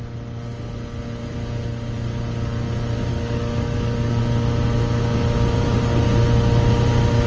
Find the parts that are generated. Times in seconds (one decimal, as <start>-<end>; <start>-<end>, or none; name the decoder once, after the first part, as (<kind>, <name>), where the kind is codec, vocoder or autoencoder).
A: 3.1-4.2 (codec, DAC)